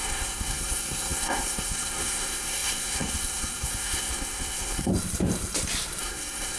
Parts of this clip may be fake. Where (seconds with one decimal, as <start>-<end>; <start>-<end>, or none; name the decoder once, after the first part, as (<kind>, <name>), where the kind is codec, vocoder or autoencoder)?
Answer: 0.0-4.9 (codec, SNAC); 6.0-6.6